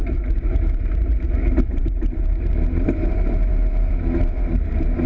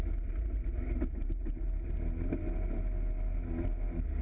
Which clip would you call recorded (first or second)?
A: second